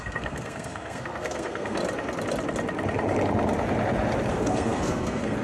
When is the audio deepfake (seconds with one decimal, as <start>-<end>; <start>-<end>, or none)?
0.0-1.8; 4.3-5.4